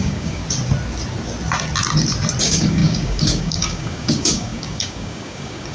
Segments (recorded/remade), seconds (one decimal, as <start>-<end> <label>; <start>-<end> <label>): 0.0-0.4 remade; 0.4-2.4 recorded; 2.4-5.7 remade